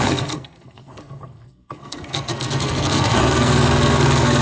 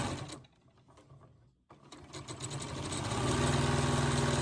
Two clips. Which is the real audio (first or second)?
second